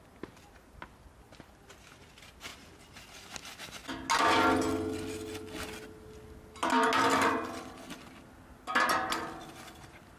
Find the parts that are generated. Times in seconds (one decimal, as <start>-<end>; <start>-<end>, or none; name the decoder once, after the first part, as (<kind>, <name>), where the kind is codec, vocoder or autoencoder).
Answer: none